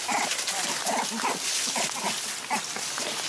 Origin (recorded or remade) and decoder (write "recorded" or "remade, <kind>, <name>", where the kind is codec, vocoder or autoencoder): recorded